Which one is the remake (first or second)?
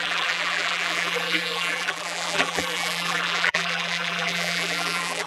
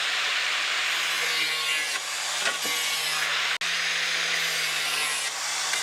first